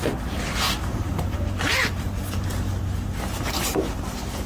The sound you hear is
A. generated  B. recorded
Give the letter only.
A